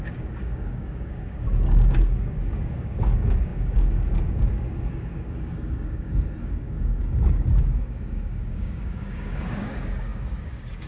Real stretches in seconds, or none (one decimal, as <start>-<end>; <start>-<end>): none